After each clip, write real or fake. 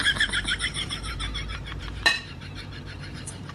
fake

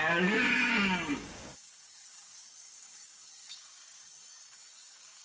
fake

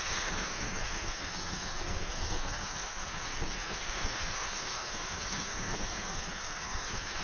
fake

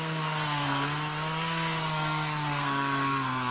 fake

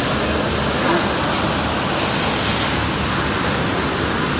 real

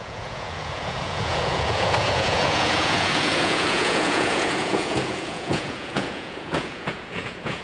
fake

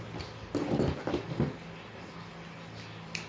real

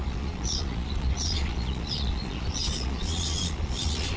fake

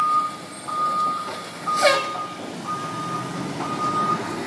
real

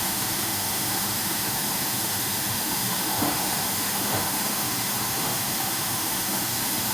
fake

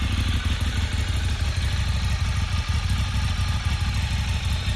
real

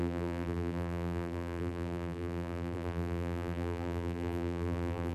fake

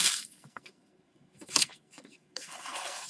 fake